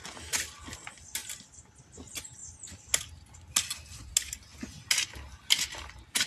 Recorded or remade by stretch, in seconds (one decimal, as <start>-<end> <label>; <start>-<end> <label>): 0.0-6.3 recorded